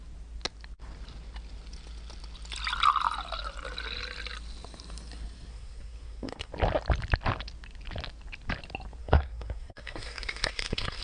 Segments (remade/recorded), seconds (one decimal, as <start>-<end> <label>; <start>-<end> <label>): 0.0-5.5 recorded; 5.5-6.5 remade; 6.5-9.0 recorded; 9.0-11.0 remade

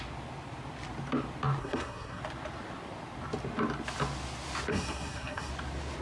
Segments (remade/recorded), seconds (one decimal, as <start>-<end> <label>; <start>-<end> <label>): 0.0-1.6 recorded; 1.6-2.2 remade; 2.2-4.7 recorded; 4.7-5.5 remade; 5.5-6.0 recorded

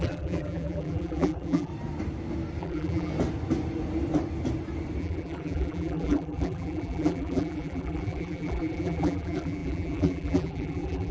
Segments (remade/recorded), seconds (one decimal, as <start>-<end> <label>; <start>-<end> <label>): 0.0-1.7 remade; 1.7-2.6 recorded; 2.6-3.1 remade; 3.1-5.0 recorded; 5.0-11.1 remade

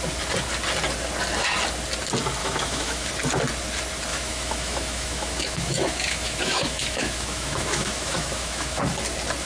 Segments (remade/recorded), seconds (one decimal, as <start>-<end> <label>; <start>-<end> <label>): 0.0-2.4 recorded; 2.4-3.1 remade; 3.1-4.1 recorded; 4.1-8.8 remade; 8.8-9.5 recorded

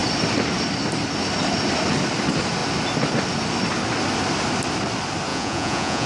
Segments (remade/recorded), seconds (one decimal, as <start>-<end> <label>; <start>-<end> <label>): 0.0-5.3 recorded; 5.3-6.1 remade

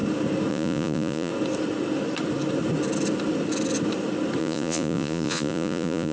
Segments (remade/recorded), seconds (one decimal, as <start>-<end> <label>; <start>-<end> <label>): 0.0-0.5 recorded; 0.5-1.3 remade; 1.3-4.4 recorded; 4.4-6.1 remade